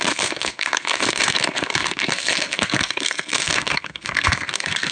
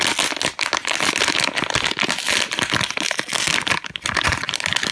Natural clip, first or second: second